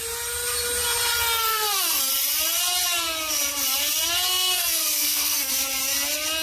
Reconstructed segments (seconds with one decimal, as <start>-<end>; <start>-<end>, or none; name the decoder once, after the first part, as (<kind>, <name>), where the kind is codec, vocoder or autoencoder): 1.5-2.1 (codec, SNAC); 4.3-5.5